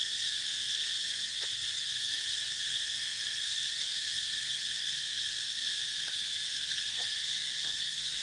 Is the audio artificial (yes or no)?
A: yes